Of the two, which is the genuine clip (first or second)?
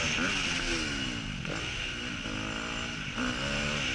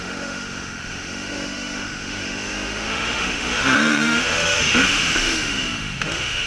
first